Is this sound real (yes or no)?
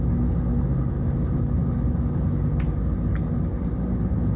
yes